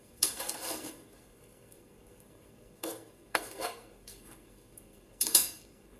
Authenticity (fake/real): fake